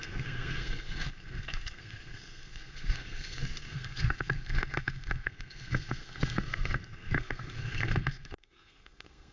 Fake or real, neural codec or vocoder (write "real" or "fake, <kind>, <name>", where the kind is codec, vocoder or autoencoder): fake, codec, SNAC